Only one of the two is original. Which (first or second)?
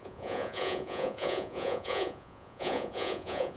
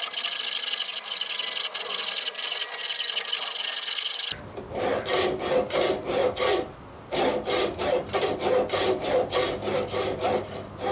second